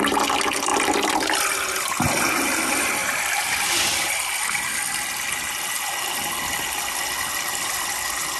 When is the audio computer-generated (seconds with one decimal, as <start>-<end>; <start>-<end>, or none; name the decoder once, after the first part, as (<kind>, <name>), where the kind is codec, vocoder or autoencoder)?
3.0-4.9 (vocoder, BigVGAN v2)